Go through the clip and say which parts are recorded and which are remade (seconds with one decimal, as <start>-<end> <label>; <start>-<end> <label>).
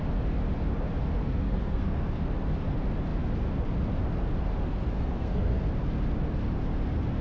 0.0-1.2 recorded; 1.2-2.2 remade; 2.2-4.7 recorded; 4.7-5.7 remade; 5.7-7.2 recorded